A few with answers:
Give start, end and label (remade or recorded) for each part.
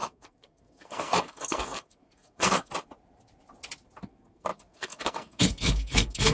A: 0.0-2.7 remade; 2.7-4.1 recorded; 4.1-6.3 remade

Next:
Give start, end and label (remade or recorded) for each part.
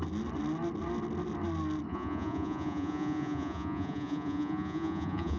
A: 0.0-1.9 recorded; 1.9-5.4 remade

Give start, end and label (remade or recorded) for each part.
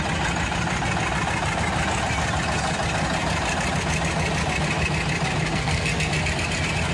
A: 0.0-5.5 recorded; 5.5-6.1 remade; 6.1-6.9 recorded